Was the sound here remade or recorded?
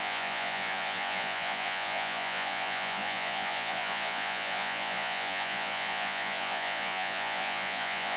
remade